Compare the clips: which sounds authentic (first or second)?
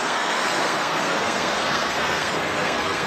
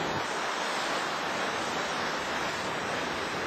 second